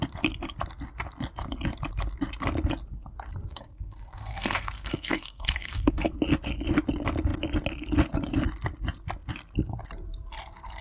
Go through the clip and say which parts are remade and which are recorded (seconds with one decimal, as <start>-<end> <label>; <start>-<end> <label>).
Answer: 0.0-3.5 recorded; 3.5-6.1 remade; 6.1-10.8 recorded